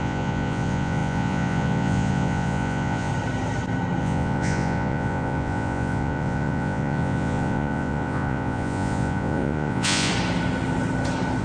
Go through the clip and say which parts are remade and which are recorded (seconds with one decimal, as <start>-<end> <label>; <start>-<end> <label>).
0.0-3.1 remade; 3.1-4.0 recorded; 4.0-10.1 remade; 10.1-11.4 recorded